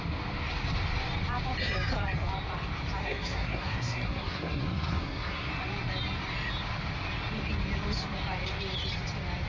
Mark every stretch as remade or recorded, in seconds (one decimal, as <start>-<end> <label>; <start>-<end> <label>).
0.0-3.0 recorded; 3.0-5.5 remade; 5.5-9.5 recorded

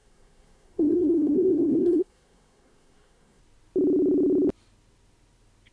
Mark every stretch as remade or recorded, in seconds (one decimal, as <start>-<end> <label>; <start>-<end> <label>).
0.0-3.4 remade; 3.4-5.7 recorded